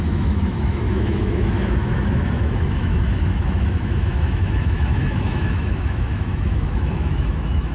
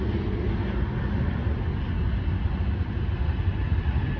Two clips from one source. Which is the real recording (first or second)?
second